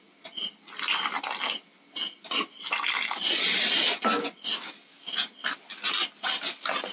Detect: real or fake real